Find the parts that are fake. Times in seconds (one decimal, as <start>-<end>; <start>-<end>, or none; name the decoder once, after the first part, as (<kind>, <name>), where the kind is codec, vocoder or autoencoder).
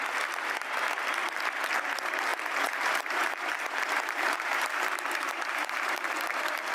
2.3-6.1 (vocoder, BigVGAN v2)